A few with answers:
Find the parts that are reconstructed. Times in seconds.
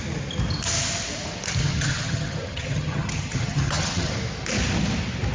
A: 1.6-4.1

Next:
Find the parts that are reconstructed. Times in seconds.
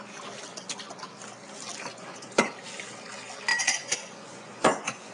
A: 1.9-2.5; 3.5-5.1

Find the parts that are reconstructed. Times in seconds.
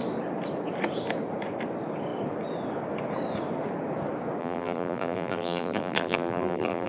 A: 4.4-6.9